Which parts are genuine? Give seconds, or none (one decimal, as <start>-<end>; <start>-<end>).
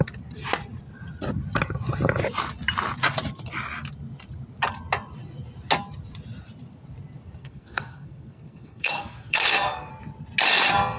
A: 0.0-7.4; 9.9-11.0